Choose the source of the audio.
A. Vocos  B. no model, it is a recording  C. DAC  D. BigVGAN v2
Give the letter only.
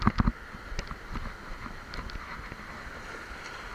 B